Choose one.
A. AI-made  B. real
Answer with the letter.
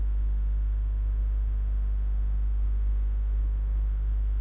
A